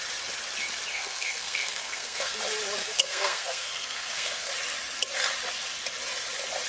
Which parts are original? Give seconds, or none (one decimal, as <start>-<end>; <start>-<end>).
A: 0.0-0.9; 2.4-2.8; 4.5-6.7